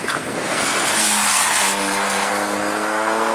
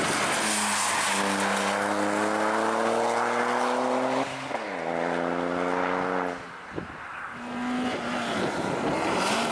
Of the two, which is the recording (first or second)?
second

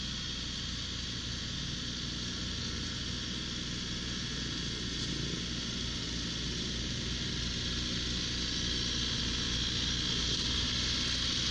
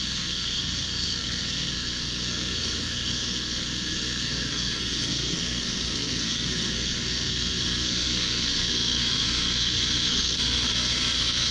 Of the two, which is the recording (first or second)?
first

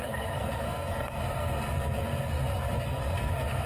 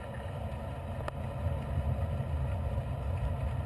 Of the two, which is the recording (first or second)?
second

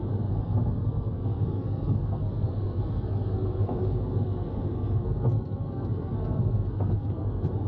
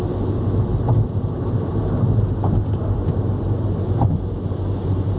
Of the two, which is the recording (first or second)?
second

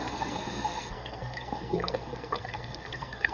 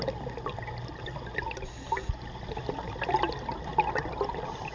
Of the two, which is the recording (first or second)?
second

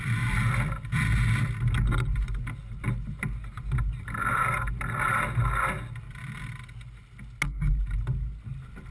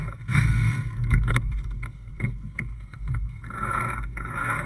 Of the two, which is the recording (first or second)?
first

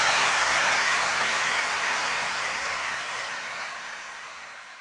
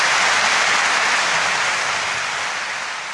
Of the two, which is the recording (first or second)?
second